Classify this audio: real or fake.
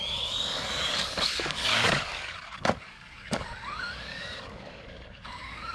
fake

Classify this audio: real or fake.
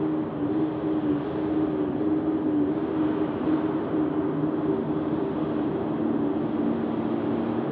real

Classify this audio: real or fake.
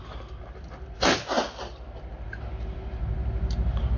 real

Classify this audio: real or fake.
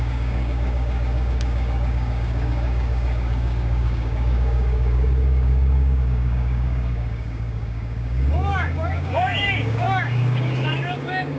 fake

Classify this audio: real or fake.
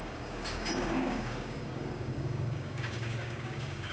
fake